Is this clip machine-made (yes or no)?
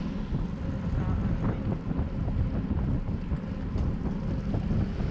no